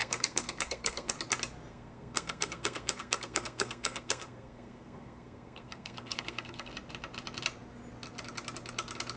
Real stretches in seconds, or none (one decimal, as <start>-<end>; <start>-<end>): 1.1-1.7; 6.7-9.2